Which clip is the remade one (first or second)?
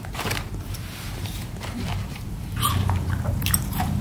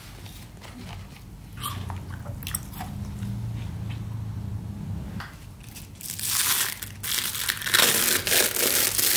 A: first